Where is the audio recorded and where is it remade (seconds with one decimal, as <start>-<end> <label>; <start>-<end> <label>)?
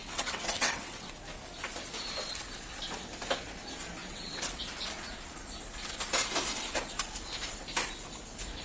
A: 0.0-1.1 remade; 1.1-4.0 recorded; 4.0-4.6 remade; 4.6-8.6 recorded